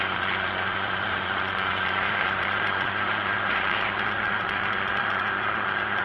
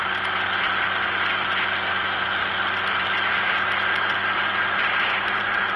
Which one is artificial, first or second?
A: first